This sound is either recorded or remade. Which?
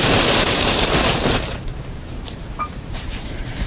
remade